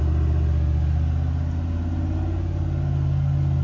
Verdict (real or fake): real